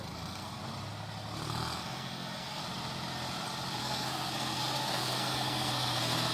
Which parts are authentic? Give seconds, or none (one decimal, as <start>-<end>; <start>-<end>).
0.6-1.5; 2.6-3.8